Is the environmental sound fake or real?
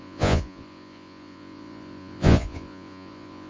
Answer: fake